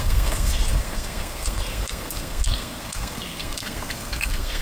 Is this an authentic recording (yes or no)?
no